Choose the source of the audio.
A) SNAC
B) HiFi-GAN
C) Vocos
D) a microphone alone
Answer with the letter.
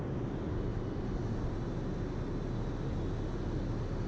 D